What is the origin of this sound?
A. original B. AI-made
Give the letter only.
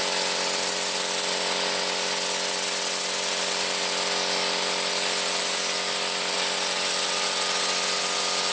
A